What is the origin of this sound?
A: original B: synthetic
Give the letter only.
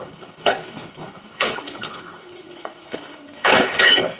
B